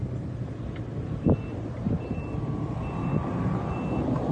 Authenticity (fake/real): real